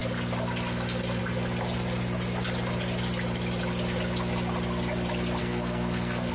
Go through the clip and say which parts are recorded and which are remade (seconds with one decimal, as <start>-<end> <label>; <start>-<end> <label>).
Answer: 0.0-5.4 recorded; 5.4-6.3 remade